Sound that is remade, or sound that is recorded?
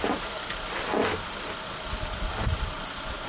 recorded